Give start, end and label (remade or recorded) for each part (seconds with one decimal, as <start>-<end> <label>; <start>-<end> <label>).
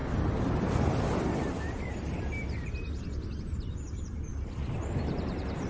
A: 0.0-3.4 recorded; 3.4-4.3 remade; 4.3-5.0 recorded; 5.0-5.7 remade